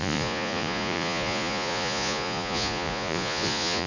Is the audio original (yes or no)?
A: no